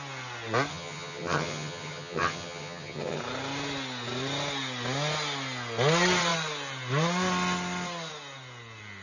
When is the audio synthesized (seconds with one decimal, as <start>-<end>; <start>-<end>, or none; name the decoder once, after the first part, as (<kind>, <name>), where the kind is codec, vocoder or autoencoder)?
0.7-3.2 (vocoder, HiFi-GAN)